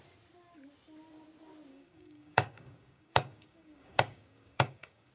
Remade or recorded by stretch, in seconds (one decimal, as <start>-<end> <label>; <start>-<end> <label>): 0.0-1.7 recorded; 1.7-5.1 remade